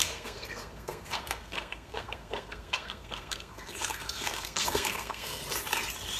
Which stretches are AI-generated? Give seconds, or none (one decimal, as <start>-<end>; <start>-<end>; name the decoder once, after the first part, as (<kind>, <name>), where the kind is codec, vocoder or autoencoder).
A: 0.0-5.4 (codec, SNAC)